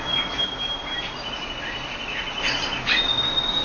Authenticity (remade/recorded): recorded